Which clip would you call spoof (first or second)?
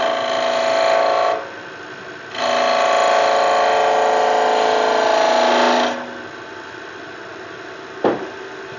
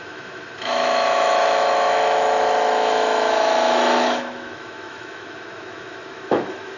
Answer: second